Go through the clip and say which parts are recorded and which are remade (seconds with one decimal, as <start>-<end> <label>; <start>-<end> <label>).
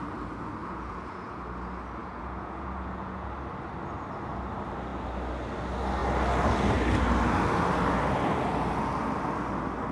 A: 0.0-0.6 recorded; 0.6-1.4 remade; 1.4-2.0 recorded; 2.0-3.3 remade; 3.3-9.9 recorded